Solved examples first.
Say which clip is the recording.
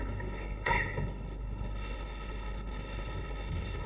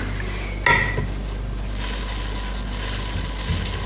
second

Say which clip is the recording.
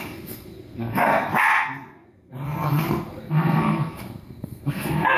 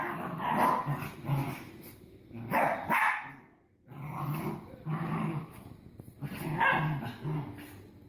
second